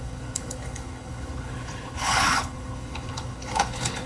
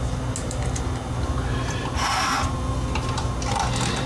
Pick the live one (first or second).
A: second